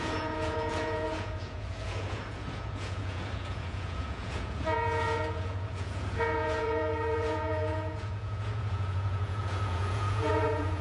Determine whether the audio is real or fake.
fake